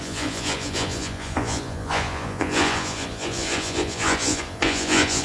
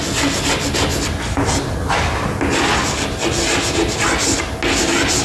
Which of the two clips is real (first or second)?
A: second